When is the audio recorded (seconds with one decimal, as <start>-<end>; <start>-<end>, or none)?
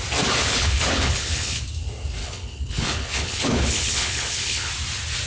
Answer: 0.0-0.4; 1.6-2.2; 4.7-5.3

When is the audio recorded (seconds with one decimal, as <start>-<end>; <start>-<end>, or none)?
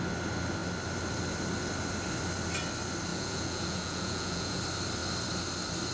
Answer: 0.0-3.1; 4.6-5.9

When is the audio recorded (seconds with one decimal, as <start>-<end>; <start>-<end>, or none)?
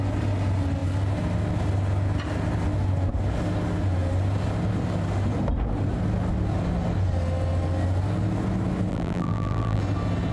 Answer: 0.0-8.9; 9.8-10.3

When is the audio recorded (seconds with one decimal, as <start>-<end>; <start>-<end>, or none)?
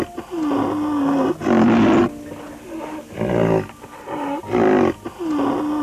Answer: 0.0-5.8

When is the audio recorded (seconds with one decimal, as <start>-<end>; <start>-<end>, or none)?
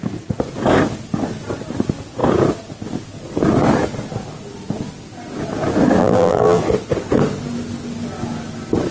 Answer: 0.0-6.0; 6.6-8.9